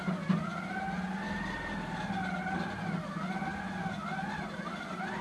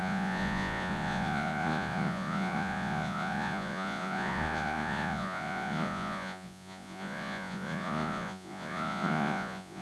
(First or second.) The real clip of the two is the first